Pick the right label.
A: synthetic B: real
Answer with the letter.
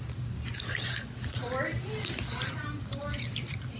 B